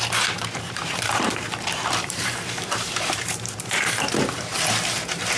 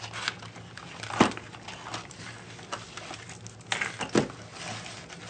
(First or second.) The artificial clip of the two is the first